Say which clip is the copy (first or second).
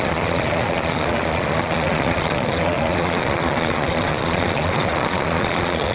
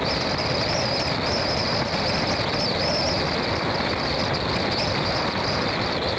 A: first